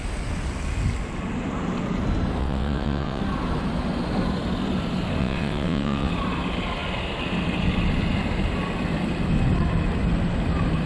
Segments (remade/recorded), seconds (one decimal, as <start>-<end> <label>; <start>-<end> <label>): 0.0-2.4 recorded; 2.4-3.2 remade; 3.2-5.2 recorded; 5.2-6.1 remade; 6.1-10.9 recorded